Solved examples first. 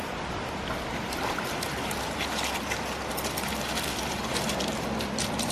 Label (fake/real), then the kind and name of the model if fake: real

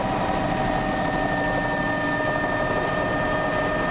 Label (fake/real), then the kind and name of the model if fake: real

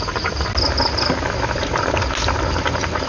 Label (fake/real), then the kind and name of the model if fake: real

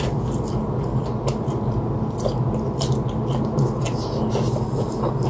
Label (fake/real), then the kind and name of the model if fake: real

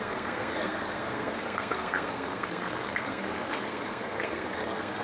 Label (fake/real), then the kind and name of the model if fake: fake, codec, SNAC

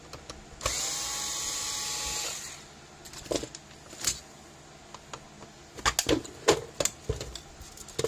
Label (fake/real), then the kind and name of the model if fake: real